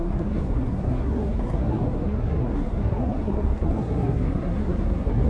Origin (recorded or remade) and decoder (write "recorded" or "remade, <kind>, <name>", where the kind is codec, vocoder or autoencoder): remade, codec, SNAC